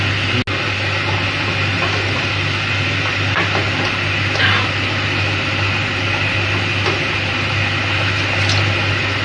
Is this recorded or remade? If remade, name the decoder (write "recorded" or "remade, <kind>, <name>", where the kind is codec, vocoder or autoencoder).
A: recorded